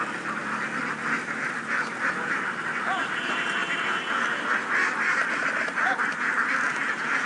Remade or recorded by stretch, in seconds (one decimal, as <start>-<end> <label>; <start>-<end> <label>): 0.0-7.3 recorded